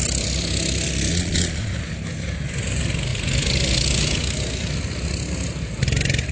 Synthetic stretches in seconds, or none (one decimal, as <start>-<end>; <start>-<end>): 1.1-1.7